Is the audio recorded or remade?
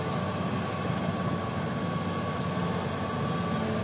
recorded